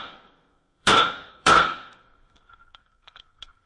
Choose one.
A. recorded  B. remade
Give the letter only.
B